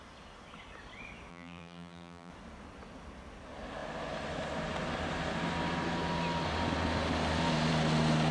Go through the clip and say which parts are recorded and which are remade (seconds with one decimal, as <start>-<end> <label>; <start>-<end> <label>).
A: 0.0-1.3 recorded; 1.3-2.3 remade; 2.3-8.3 recorded